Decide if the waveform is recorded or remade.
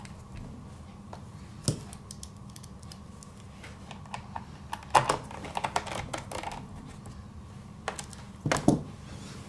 recorded